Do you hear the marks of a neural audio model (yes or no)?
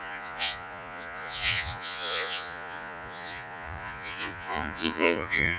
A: yes